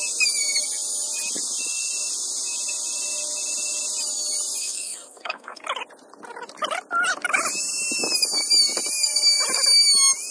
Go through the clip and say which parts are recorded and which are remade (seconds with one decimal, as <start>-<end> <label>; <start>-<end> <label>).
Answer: 0.0-4.6 recorded; 4.6-5.6 remade; 5.6-10.3 recorded